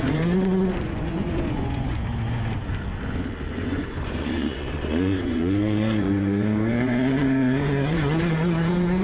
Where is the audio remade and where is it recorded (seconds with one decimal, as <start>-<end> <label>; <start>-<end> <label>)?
0.0-2.0 remade; 2.0-3.5 recorded; 3.5-9.0 remade